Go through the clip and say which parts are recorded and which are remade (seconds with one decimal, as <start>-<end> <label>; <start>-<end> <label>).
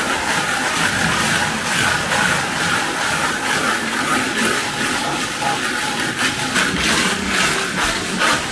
0.0-8.5 recorded